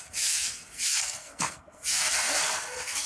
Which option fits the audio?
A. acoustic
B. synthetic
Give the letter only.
B